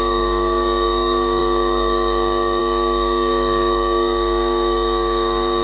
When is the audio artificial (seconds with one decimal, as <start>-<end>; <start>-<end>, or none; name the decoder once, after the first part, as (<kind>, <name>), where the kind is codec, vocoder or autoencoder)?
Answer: 0.0-5.6 (codec, DAC)